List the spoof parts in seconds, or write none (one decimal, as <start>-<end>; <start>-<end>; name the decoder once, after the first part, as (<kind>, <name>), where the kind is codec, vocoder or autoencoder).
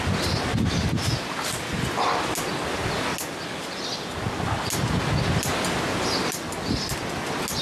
none